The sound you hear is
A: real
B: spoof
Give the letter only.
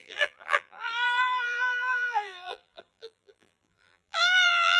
B